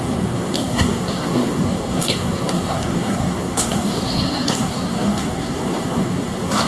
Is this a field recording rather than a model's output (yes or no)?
no